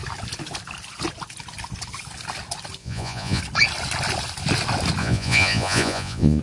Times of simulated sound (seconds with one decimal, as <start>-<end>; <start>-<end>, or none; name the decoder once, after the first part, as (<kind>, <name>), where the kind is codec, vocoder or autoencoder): 2.8-3.4 (vocoder, Vocos); 5.0-6.4